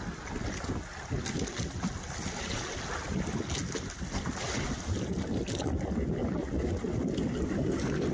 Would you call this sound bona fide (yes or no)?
yes